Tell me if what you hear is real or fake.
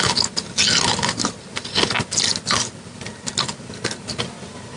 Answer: real